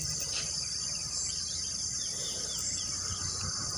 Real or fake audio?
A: real